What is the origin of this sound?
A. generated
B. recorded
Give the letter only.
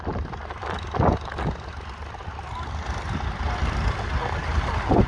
B